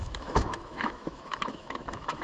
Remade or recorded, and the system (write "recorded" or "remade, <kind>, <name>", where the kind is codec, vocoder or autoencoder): remade, autoencoder, DAC-VAE